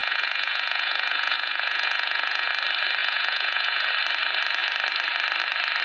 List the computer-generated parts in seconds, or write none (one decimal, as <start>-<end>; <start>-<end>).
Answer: 0.0-2.5; 3.0-3.9